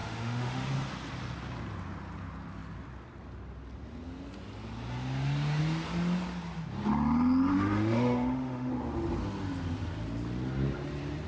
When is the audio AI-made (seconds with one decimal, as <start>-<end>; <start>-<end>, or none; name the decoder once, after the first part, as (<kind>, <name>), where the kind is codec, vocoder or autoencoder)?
0.0-0.7 (autoencoder, DAC-VAE); 7.5-8.7

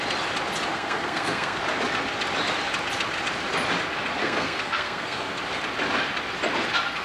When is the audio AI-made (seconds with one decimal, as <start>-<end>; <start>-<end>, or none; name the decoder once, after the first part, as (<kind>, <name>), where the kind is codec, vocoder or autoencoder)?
0.7-1.6 (codec, SNAC); 4.2-5.3

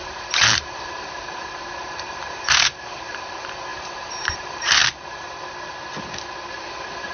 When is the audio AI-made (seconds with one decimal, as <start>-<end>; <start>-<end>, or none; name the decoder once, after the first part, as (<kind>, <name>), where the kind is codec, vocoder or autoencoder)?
0.0-4.8 (vocoder, BigVGAN v2); 6.5-7.1

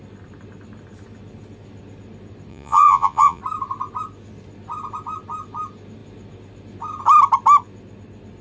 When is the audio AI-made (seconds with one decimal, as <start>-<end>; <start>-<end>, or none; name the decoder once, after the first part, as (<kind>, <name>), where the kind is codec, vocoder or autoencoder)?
2.5-3.4 (vocoder, Vocos)

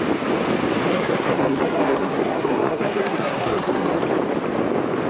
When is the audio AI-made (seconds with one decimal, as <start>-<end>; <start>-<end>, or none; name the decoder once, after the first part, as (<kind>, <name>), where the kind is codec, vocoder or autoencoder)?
0.9-4.0 (codec, SNAC)